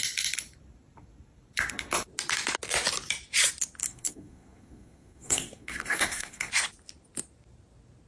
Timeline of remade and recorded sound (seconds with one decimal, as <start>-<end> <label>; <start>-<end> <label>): 0.0-3.8 recorded; 3.8-6.5 remade; 6.5-8.1 recorded